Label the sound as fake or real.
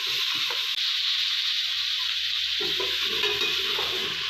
real